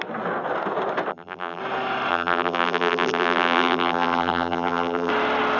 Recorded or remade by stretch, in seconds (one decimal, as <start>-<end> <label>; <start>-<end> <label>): 0.0-1.1 recorded; 1.1-1.6 remade; 1.6-2.1 recorded; 2.1-5.1 remade; 5.1-5.6 recorded